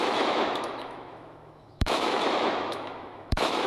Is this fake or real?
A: fake